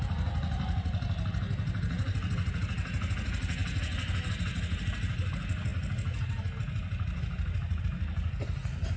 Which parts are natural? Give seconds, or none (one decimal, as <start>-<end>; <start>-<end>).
0.0-9.0